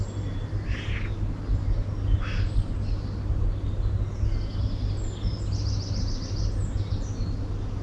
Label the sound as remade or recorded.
recorded